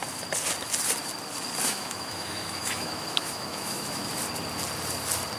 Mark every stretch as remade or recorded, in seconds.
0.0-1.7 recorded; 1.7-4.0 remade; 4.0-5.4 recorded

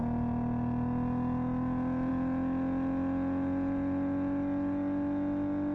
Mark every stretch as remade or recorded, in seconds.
0.0-5.7 recorded

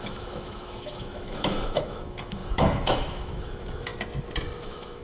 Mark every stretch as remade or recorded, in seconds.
0.0-3.9 remade; 3.9-4.6 recorded; 4.6-5.0 remade

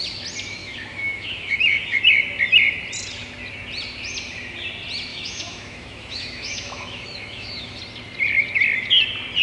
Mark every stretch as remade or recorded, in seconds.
0.0-0.6 recorded; 0.6-2.0 remade; 2.0-5.1 recorded; 5.1-7.8 remade; 7.8-9.4 recorded

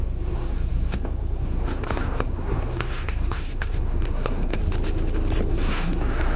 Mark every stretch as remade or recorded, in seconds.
0.0-4.6 remade; 4.6-5.5 recorded; 5.5-6.4 remade

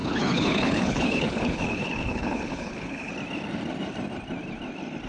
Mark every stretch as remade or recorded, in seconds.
0.0-3.1 remade; 3.1-5.1 recorded

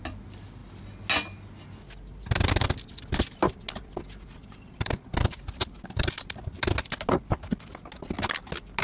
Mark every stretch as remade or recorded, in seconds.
0.0-8.8 recorded